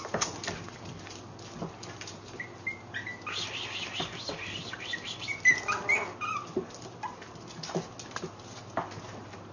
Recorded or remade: recorded